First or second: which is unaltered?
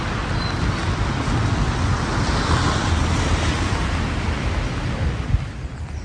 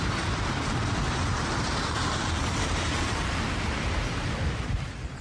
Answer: first